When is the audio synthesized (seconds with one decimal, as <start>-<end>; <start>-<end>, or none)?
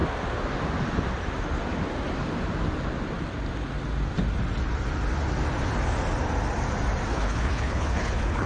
7.1-8.5